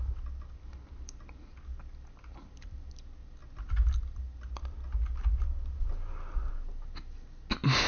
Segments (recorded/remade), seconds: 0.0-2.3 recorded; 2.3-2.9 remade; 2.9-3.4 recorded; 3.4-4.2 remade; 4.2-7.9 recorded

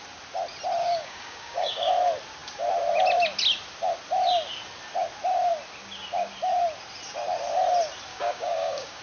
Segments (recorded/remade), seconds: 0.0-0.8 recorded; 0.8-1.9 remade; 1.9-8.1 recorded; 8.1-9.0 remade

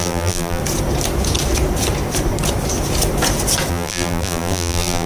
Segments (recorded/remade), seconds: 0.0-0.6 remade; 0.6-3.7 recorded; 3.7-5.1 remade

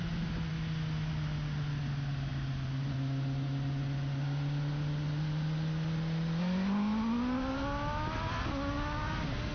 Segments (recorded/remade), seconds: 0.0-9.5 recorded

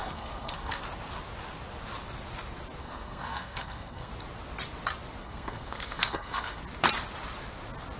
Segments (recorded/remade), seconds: 0.0-0.8 remade; 0.8-2.8 recorded; 2.8-4.1 remade; 4.1-5.2 recorded; 5.2-6.6 remade; 6.6-8.0 recorded

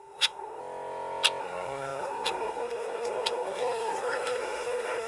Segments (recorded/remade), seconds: 0.0-0.6 remade; 0.6-1.4 recorded; 1.4-5.1 remade

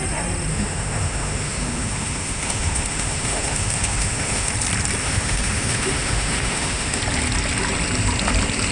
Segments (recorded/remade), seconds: 0.0-0.5 recorded; 0.5-4.5 remade; 4.5-5.0 recorded; 5.0-7.0 remade; 7.0-8.7 recorded